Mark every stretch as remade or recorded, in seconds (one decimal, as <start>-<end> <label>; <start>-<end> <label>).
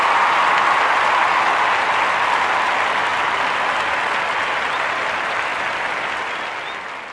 0.0-7.1 recorded